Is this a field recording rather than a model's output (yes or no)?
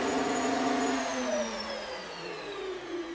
no